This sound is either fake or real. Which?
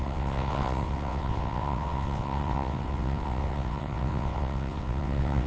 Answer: fake